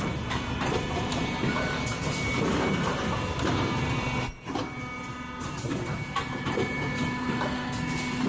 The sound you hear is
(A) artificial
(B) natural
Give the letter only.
B